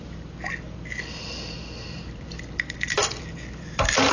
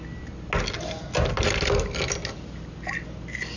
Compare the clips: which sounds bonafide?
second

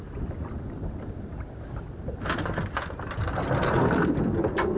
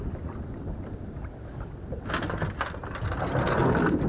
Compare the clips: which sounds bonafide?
second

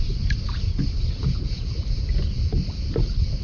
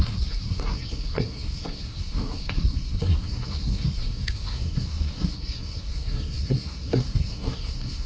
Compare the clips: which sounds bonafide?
first